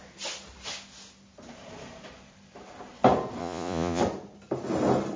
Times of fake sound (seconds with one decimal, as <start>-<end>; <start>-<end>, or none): 3.4-4.0

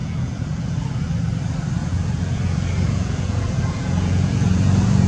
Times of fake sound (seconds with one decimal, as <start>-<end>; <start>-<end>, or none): 0.0-1.0; 1.8-5.1

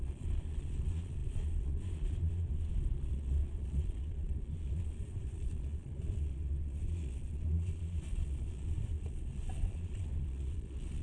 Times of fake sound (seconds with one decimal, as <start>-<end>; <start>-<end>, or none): 0.0-11.0

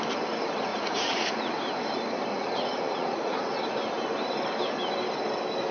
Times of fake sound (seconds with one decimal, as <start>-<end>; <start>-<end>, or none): 0.7-1.3; 2.3-3.6

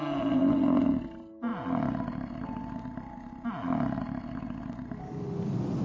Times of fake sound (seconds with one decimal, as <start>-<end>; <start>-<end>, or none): none